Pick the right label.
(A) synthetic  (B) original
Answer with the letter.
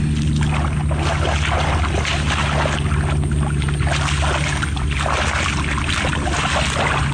B